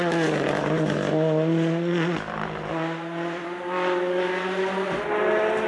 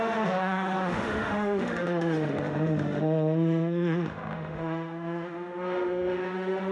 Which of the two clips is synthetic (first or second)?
second